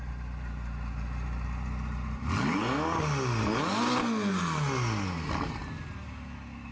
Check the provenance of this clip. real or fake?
real